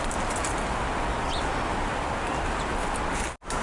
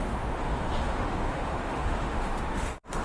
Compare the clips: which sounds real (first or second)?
first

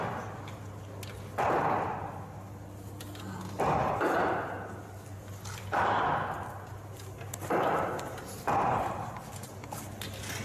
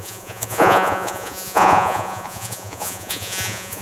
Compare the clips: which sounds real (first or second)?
first